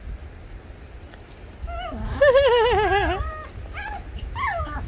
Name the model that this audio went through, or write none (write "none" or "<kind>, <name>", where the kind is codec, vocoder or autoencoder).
none